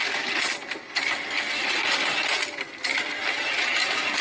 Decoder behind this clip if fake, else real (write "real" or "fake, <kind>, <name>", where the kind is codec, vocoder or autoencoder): real